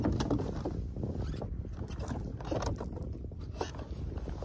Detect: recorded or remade recorded